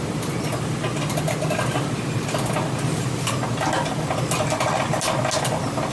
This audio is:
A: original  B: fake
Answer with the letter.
A